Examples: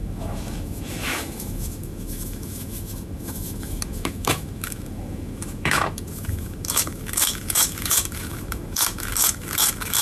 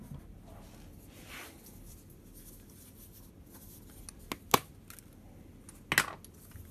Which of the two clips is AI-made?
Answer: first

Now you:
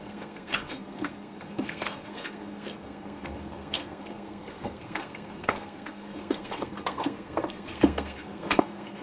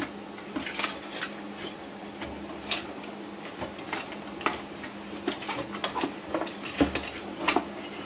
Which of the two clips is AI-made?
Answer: first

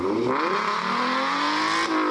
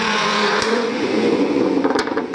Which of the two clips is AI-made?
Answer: second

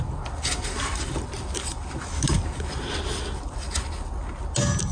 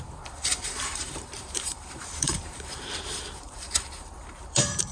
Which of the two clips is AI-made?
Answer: second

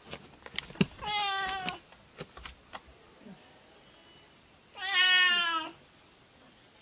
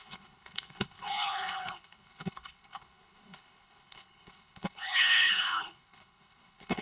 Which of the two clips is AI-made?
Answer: second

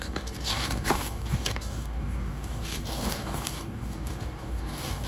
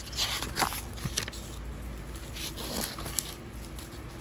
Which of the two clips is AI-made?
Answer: first